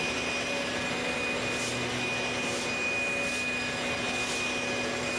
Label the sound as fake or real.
real